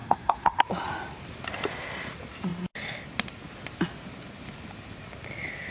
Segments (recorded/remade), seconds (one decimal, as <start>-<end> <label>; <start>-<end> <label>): 0.0-0.6 remade; 0.6-5.7 recorded